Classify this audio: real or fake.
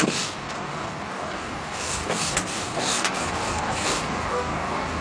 fake